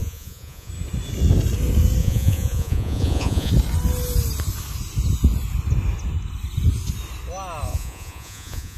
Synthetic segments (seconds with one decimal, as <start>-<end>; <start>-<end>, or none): 0.0-0.7; 2.0-3.5; 7.7-8.8